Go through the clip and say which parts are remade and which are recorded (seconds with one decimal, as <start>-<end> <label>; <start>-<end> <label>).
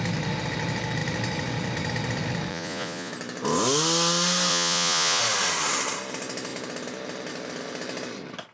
0.0-2.5 recorded; 2.5-3.1 remade; 3.1-4.5 recorded; 4.5-5.2 remade; 5.2-8.5 recorded